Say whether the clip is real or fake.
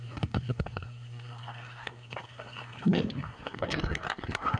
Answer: fake